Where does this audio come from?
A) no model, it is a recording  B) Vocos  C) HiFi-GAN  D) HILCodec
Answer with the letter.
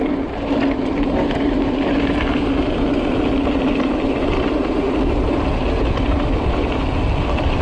A